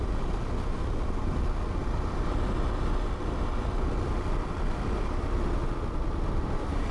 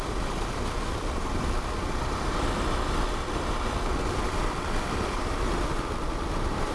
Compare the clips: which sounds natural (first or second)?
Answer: first